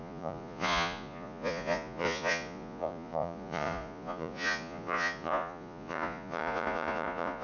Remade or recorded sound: remade